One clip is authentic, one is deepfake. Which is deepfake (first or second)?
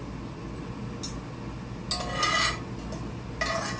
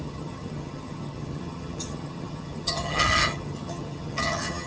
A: second